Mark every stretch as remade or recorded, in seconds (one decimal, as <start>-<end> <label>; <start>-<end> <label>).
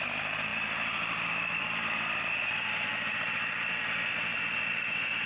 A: 0.0-0.5 recorded; 0.5-3.7 remade; 3.7-5.3 recorded